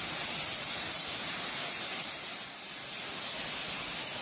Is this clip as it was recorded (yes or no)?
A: yes